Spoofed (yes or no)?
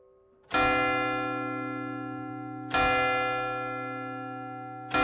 no